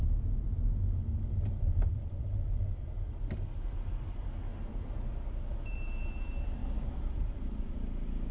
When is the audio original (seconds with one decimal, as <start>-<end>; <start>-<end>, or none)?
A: 4.5-5.6